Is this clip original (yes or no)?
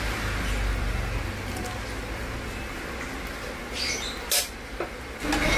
yes